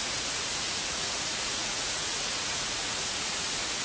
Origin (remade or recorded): remade